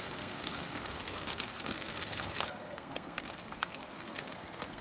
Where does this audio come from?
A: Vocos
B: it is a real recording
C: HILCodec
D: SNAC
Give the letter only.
D